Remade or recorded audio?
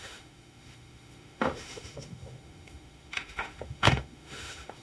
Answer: remade